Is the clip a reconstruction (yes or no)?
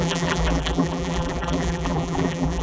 yes